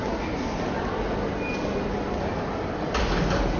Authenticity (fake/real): real